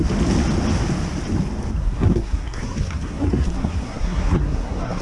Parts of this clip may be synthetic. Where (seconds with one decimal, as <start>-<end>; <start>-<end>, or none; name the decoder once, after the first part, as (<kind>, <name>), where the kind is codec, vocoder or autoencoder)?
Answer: 1.8-5.0 (codec, SNAC)